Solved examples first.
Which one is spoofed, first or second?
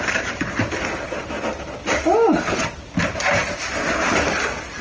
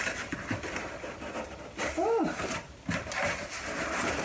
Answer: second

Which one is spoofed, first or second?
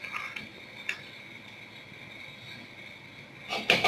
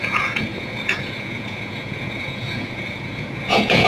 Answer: second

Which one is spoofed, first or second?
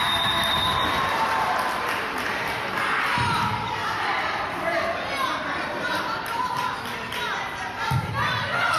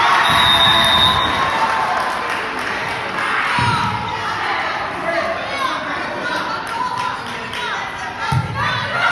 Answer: first